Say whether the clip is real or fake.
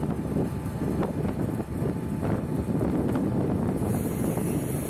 real